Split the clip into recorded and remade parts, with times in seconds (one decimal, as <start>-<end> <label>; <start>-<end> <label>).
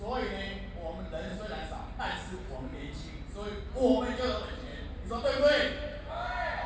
0.0-1.3 recorded; 1.3-2.0 remade; 2.0-4.7 recorded; 4.7-6.1 remade; 6.1-6.7 recorded